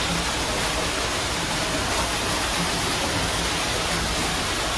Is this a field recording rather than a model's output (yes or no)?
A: yes